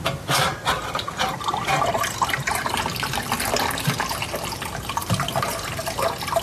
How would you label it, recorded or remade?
recorded